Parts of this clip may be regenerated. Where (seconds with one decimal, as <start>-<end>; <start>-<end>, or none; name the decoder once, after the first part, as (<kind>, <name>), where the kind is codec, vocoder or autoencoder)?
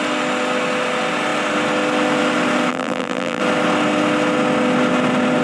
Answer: 2.7-3.4 (vocoder, BigVGAN v2)